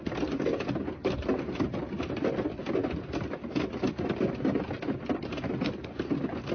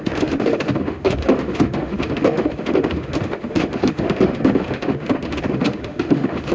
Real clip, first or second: first